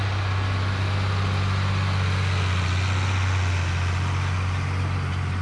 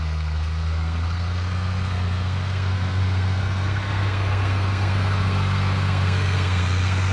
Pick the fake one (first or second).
second